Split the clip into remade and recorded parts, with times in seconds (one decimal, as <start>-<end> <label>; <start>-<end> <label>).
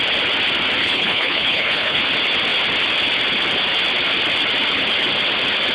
0.0-0.8 recorded; 0.8-2.0 remade; 2.0-5.7 recorded